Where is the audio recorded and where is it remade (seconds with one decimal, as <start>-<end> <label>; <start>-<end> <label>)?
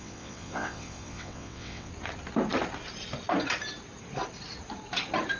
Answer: 0.0-1.9 remade; 1.9-5.4 recorded